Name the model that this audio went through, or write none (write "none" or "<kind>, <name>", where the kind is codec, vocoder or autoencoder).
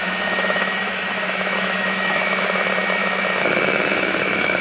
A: autoencoder, DAC-VAE